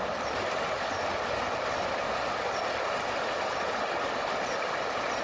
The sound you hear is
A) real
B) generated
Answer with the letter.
A